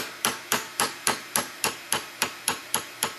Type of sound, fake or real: fake